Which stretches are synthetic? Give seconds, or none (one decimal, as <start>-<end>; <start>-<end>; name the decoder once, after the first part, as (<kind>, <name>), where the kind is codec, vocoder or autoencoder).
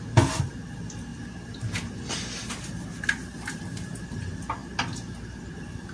1.1-2.1 (vocoder, BigVGAN v2)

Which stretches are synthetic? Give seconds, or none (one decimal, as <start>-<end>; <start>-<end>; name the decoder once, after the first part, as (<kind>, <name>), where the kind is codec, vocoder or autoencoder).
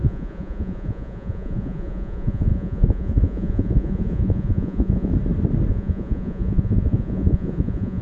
0.0-5.1 (vocoder, Vocos); 5.7-8.0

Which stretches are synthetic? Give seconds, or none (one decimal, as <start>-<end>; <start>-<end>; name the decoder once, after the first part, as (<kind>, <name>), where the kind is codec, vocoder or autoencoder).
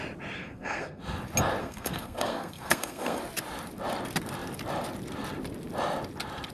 0.4-1.0 (codec, SNAC); 1.6-3.2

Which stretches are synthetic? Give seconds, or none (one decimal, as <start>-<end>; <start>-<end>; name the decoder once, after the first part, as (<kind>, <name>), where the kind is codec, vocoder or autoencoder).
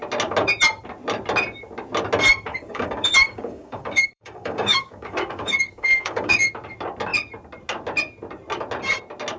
2.5-6.5 (codec, DAC)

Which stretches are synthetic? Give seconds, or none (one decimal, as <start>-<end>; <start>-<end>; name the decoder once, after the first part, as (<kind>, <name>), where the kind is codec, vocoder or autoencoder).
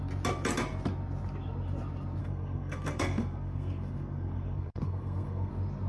2.2-5.5 (codec, SNAC)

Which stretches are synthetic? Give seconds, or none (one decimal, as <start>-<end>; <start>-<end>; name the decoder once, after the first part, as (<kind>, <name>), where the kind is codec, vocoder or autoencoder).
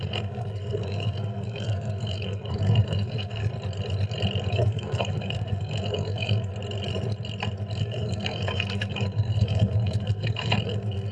0.0-3.4 (codec, SNAC); 4.5-6.5; 7.8-11.1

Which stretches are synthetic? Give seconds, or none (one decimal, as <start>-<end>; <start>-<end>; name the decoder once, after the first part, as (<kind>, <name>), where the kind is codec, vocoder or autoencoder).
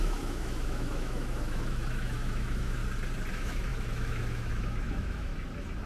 0.0-2.8 (autoencoder, DAC-VAE); 3.3-5.3